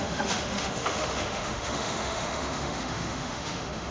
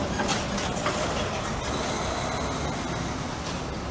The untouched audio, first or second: second